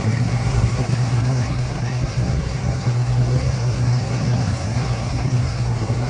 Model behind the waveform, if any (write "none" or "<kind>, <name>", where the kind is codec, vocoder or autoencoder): codec, SNAC